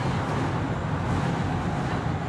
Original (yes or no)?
yes